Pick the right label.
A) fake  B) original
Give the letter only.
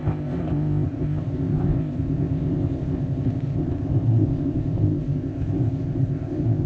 A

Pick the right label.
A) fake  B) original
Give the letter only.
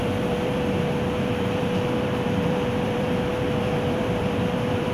A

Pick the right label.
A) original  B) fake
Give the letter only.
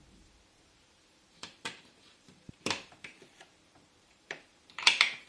B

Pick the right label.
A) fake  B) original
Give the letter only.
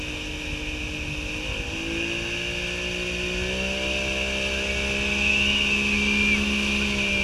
B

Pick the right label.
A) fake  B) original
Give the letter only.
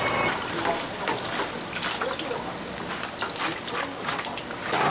B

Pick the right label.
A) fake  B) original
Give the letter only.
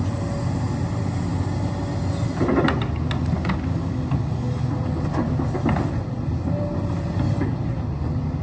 B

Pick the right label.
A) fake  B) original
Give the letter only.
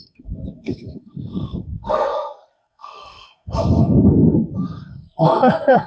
A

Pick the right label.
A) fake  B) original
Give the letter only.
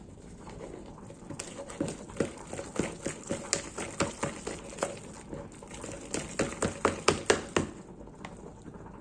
B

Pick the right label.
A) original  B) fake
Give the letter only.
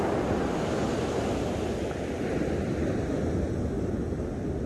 A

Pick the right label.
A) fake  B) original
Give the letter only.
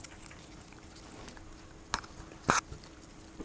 B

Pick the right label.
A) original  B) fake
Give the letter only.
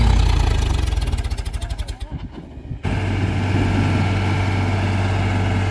A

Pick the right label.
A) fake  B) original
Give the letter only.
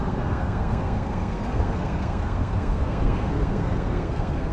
A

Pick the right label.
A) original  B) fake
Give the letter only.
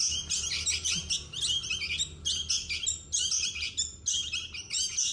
A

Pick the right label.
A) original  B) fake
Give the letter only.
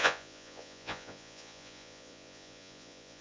B